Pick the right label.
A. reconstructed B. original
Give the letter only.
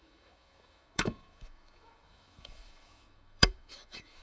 A